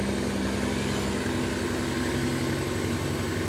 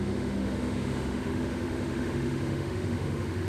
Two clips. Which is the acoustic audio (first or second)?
first